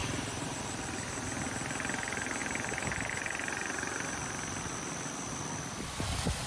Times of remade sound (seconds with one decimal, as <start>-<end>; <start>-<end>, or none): 0.0-0.6; 2.4-3.1